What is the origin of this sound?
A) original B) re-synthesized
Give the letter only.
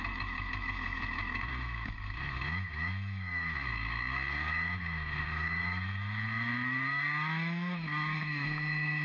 B